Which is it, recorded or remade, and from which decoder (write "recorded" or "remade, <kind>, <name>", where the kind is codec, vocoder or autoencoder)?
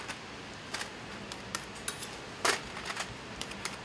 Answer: recorded